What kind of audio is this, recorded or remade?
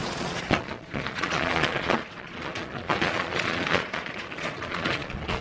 remade